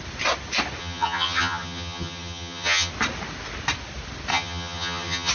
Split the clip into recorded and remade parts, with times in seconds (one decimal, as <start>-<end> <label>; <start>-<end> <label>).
0.0-0.8 recorded; 0.8-2.9 remade; 2.9-4.3 recorded; 4.3-5.3 remade